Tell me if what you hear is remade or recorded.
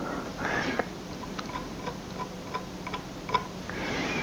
recorded